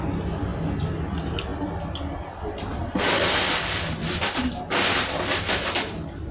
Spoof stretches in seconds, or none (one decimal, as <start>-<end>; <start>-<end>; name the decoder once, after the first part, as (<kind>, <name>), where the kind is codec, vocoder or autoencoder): none